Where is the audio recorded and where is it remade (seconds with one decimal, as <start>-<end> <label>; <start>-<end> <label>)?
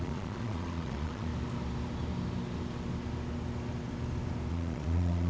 0.0-1.3 remade; 1.3-4.5 recorded; 4.5-5.3 remade